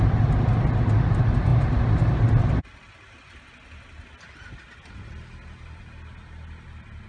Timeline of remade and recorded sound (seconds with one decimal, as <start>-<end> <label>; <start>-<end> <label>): 0.0-7.1 recorded